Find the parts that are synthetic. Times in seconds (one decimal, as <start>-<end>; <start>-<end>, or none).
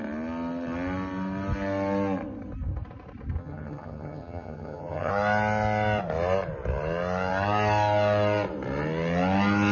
3.4-5.1